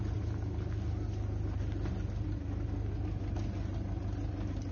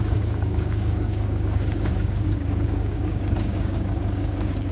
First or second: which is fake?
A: second